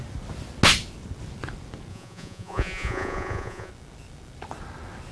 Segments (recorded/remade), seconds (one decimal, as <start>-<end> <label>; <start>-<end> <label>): 0.0-1.9 recorded; 1.9-3.7 remade; 3.7-5.1 recorded